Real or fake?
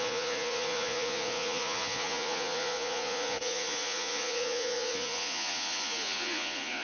fake